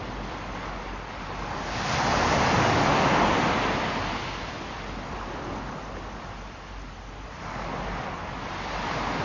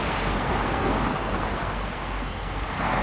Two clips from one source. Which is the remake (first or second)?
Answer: second